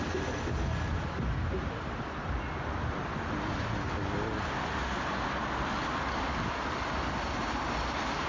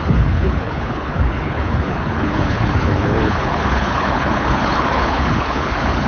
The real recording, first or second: first